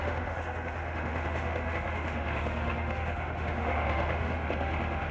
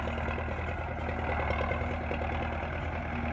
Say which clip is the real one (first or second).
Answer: second